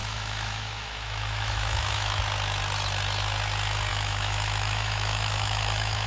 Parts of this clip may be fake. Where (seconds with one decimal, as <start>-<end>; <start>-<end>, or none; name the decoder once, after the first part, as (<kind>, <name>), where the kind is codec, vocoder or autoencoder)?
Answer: 0.0-2.2 (autoencoder, DAC-VAE); 3.9-6.1